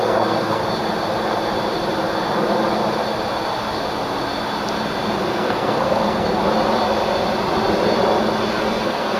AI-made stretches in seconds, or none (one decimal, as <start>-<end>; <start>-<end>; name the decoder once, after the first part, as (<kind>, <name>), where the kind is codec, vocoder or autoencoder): 0.0-0.6 (codec, SNAC); 5.3-6.4; 8.6-9.2